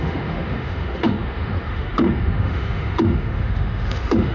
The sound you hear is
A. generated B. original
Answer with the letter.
A